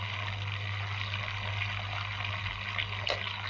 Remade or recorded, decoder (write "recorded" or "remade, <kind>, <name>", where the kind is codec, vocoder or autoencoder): recorded